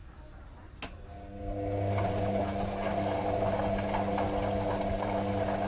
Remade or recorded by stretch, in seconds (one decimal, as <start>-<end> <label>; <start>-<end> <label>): 0.0-5.7 recorded